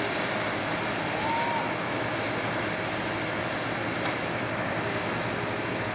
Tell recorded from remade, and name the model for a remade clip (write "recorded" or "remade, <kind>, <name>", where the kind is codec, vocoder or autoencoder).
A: recorded